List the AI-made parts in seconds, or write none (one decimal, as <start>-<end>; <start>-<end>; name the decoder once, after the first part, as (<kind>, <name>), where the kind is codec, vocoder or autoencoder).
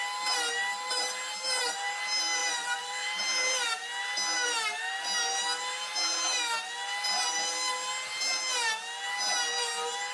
2.4-3.7 (vocoder, BigVGAN v2)